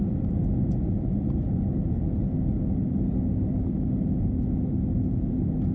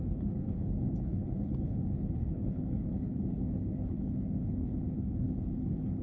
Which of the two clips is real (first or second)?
first